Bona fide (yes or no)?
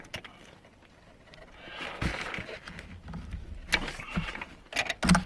yes